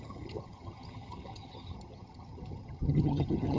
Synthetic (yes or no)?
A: yes